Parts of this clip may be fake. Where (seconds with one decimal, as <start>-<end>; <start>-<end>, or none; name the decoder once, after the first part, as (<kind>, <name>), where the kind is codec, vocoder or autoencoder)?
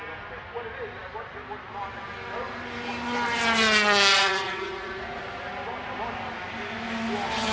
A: 4.1-5.2 (vocoder, Vocos)